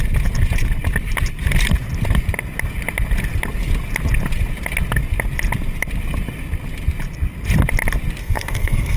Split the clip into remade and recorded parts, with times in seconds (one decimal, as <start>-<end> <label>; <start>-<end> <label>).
0.0-8.2 recorded; 8.2-9.0 remade